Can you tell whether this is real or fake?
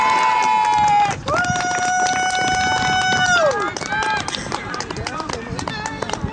real